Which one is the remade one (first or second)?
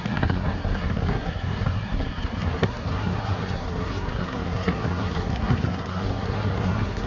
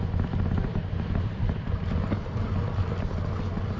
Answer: first